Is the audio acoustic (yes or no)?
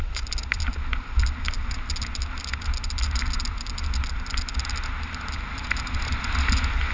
yes